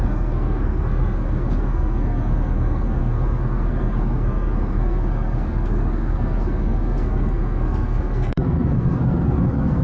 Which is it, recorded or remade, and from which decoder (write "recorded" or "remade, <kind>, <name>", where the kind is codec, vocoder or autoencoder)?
remade, codec, SNAC